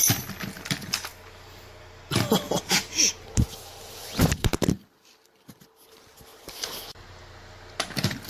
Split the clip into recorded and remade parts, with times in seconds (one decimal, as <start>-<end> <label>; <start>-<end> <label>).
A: 0.0-8.3 recorded